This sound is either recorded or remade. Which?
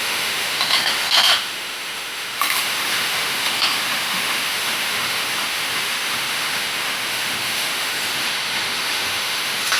remade